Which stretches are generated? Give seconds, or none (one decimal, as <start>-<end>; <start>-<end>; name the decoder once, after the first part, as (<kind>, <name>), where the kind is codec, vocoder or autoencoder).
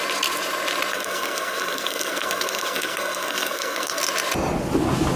0.9-4.0 (codec, SNAC)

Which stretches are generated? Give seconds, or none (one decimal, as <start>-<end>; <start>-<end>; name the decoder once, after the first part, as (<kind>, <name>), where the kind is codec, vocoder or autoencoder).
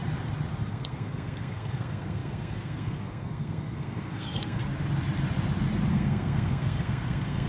0.7-4.6 (codec, SNAC); 5.9-7.5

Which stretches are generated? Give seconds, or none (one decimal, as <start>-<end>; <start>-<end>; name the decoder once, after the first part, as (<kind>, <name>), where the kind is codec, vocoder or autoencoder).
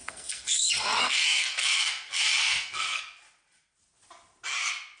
0.0-3.0 (codec, SNAC)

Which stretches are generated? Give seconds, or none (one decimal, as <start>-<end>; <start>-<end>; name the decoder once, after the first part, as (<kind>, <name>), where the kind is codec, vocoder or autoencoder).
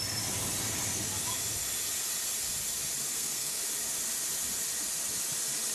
3.1-3.6 (codec, SNAC)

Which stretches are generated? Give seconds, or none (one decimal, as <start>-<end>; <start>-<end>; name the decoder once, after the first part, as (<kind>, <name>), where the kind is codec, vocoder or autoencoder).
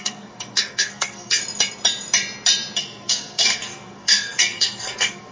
0.0-1.4 (codec, SNAC); 2.8-5.3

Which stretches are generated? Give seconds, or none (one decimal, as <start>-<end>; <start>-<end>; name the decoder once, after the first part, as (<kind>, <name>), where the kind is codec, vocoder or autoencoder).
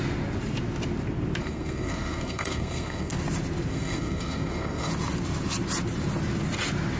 1.4-3.1 (codec, SNAC); 3.7-4.9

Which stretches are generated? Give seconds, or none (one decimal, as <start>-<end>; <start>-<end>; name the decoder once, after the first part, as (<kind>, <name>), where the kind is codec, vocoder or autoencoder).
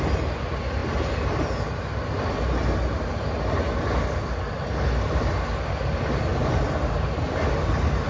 none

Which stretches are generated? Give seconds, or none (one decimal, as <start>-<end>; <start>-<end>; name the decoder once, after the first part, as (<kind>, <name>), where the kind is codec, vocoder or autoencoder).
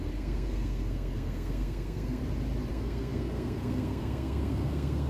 0.0-2.2 (codec, SNAC); 2.7-5.1